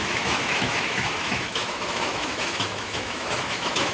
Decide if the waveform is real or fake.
fake